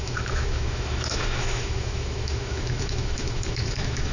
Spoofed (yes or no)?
yes